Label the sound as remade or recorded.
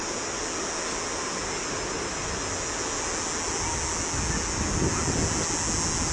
recorded